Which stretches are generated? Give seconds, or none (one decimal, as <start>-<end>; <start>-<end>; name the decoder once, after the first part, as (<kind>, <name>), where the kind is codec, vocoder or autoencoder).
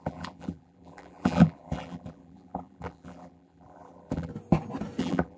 0.0-4.3 (vocoder, BigVGAN v2); 5.0-5.4